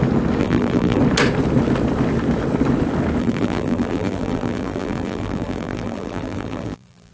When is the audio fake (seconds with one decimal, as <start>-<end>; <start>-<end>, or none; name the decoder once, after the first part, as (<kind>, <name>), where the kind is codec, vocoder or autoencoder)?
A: 0.4-1.0 (vocoder, BigVGAN v2); 3.2-7.1

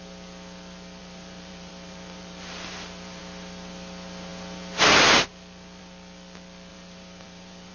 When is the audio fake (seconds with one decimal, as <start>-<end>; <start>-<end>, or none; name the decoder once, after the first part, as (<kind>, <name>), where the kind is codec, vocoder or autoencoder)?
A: 1.0-3.2 (vocoder, BigVGAN v2); 6.7-7.7

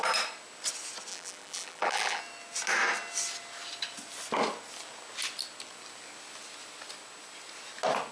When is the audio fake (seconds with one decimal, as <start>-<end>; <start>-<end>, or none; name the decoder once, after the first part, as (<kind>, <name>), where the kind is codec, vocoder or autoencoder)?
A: 1.1-2.2 (vocoder, BigVGAN v2)

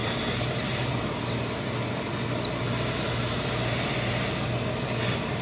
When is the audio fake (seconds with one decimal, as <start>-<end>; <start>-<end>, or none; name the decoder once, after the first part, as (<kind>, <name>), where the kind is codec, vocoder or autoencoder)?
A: 0.0-1.0 (vocoder, BigVGAN v2)

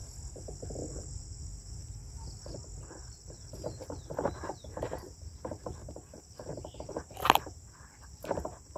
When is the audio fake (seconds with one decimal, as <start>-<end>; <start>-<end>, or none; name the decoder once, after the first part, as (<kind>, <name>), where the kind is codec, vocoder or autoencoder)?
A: 1.0-1.8 (vocoder, BigVGAN v2); 3.0-5.8; 6.9-8.8

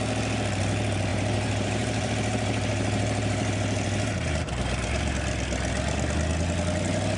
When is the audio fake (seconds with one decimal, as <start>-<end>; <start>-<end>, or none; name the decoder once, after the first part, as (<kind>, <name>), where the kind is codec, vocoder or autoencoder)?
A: 1.1-5.1 (vocoder, BigVGAN v2)

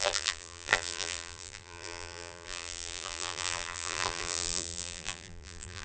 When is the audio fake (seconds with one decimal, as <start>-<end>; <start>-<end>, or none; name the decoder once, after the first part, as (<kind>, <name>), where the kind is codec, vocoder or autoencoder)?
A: 0.0-5.8 (vocoder, BigVGAN v2)

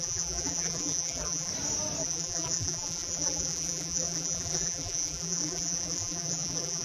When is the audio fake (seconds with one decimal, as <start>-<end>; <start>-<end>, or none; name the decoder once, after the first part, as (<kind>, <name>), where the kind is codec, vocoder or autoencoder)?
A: 0.0-1.5 (vocoder, BigVGAN v2); 2.0-6.8